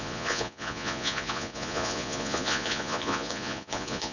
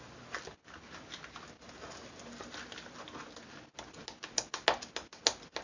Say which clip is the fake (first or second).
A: first